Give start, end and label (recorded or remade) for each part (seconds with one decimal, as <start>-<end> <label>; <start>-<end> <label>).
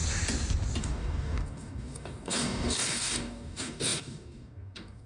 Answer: 0.0-0.8 recorded; 0.8-5.1 remade